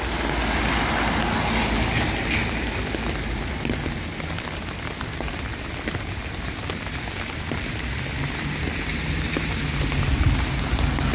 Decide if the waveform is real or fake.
real